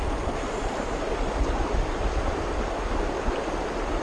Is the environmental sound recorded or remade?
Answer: recorded